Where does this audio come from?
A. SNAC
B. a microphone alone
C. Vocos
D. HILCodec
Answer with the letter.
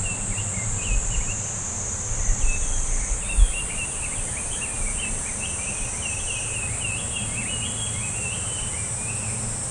B